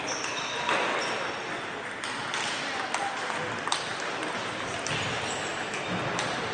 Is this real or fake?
real